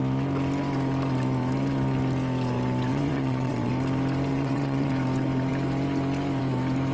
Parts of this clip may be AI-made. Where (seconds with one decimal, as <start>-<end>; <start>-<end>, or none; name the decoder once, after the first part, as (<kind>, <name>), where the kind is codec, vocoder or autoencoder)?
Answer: 2.9-3.7 (vocoder, WaveNeXt); 4.3-4.9

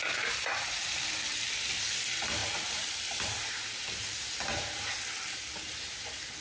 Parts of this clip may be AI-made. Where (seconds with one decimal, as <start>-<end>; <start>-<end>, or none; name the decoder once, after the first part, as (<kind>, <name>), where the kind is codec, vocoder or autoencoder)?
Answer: none

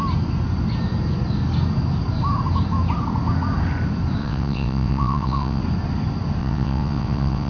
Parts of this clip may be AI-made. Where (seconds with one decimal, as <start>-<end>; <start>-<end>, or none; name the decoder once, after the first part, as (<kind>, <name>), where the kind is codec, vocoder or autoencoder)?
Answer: 4.2-5.6 (vocoder, WaveNeXt); 6.4-7.5